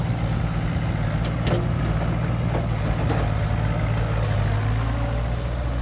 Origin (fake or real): real